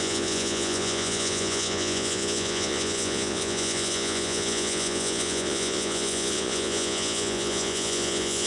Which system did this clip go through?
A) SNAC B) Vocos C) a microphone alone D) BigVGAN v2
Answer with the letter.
B